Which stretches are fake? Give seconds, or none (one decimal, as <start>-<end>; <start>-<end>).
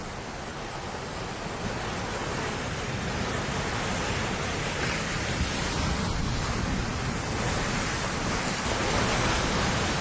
0.5-1.3; 2.2-4.2; 4.8-5.6